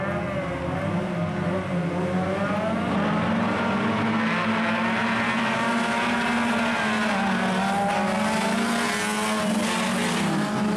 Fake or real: real